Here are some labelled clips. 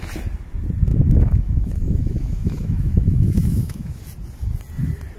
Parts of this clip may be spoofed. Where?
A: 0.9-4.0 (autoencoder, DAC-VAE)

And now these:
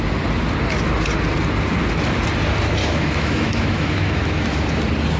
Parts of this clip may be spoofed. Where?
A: 2.8-4.8 (autoencoder, DAC-VAE)

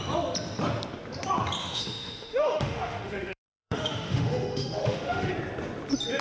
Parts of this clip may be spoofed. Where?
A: 1.6-5.3 (autoencoder, DAC-VAE)

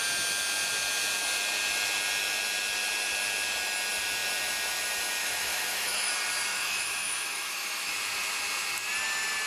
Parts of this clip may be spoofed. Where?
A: 5.2-6.1 (autoencoder, DAC-VAE); 6.5-7.9

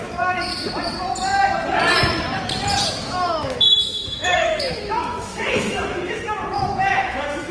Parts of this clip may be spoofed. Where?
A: 0.0-0.5 (autoencoder, DAC-VAE); 2.9-7.5

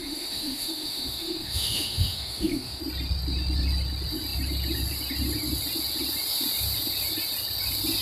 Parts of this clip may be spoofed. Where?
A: 0.0-2.8 (autoencoder, DAC-VAE)

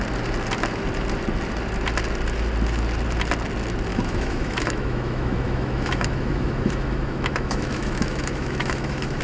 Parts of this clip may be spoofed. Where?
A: 3.9-9.2 (autoencoder, DAC-VAE)

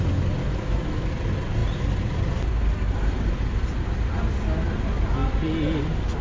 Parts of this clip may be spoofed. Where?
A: 0.4-1.1 (autoencoder, DAC-VAE)